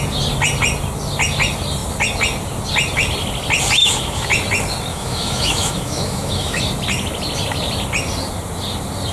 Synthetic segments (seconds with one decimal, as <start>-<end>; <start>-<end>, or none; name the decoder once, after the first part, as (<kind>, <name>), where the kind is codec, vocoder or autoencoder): 3.8-4.3 (autoencoder, DAC-VAE); 4.9-6.6